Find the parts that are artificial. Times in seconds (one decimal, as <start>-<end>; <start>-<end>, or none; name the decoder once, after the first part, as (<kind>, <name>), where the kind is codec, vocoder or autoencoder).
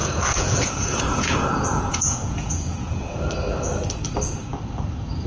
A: 0.0-3.2 (vocoder, Vocos)